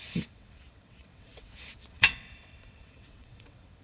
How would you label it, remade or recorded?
remade